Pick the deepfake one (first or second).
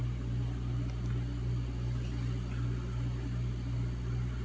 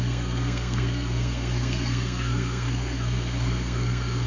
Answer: second